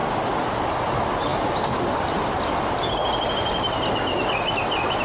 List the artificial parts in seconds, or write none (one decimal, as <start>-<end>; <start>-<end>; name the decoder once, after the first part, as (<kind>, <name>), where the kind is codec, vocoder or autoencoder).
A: none